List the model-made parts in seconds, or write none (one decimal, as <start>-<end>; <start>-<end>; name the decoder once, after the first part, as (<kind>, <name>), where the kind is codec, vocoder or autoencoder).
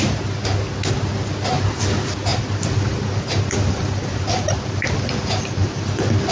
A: 2.3-6.3 (vocoder, BigVGAN v2)